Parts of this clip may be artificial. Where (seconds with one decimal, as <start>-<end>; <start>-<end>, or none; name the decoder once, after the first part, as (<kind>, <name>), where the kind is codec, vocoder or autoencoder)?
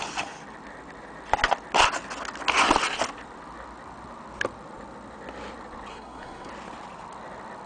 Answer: 5.9-6.5 (codec, SNAC)